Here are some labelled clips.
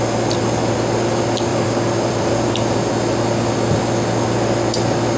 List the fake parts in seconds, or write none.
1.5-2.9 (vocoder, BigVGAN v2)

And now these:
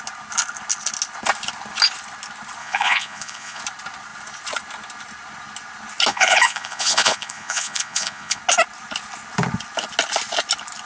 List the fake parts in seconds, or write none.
2.6-3.6 (vocoder, Vocos); 6.1-8.4

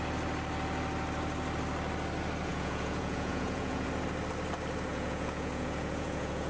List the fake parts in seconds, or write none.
2.5-3.9 (vocoder, Vocos); 4.9-6.5

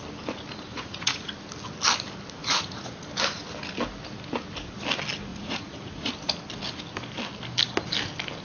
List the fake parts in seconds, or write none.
0.7-1.3 (vocoder, Vocos); 2.4-3.1; 5.3-6.1

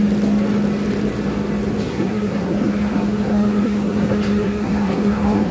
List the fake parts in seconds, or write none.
1.9-5.5 (codec, SNAC)

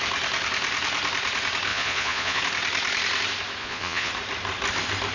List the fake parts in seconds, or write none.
1.7-2.4 (vocoder, Vocos); 3.6-4.1

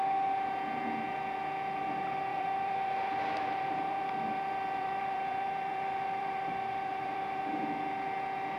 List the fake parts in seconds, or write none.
2.3-7.4 (vocoder, BigVGAN v2)